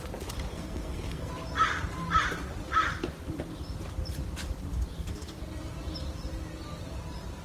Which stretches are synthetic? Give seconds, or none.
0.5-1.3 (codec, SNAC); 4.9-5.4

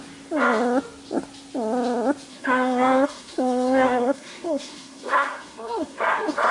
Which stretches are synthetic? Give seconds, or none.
2.3-6.5 (codec, SNAC)

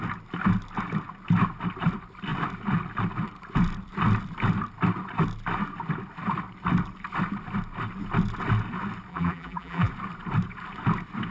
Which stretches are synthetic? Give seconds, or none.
9.1-9.9 (vocoder, BigVGAN v2)

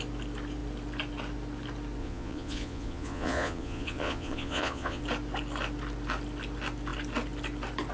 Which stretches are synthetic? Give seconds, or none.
2.0-5.0 (vocoder, Vocos)